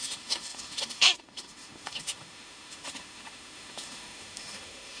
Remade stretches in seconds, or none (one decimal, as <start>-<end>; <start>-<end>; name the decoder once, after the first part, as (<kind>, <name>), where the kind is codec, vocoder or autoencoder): 0.0-5.0 (autoencoder, DAC-VAE)